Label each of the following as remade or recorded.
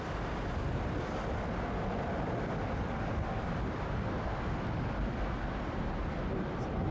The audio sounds recorded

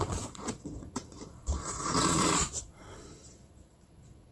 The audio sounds remade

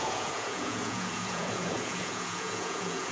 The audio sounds remade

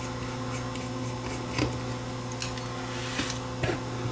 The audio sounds recorded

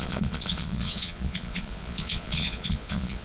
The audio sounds remade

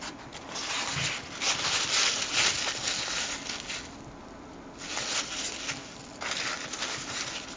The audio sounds recorded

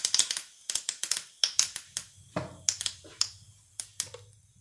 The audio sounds recorded